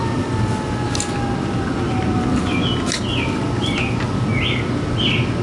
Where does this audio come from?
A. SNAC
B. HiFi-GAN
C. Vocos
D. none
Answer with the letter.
D